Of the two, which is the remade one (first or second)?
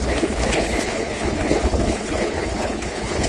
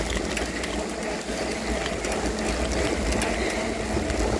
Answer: first